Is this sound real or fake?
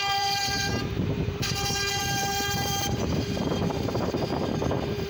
fake